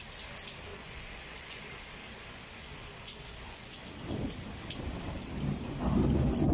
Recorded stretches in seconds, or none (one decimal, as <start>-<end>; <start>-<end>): 0.0-0.7; 1.6-2.0; 3.9-6.5